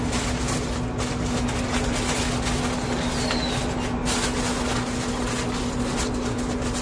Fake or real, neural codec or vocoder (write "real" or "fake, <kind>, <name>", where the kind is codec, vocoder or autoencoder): real